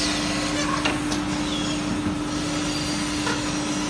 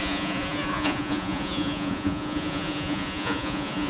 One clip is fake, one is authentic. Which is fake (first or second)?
second